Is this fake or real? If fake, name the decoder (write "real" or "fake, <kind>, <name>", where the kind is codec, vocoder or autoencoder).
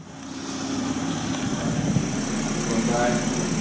real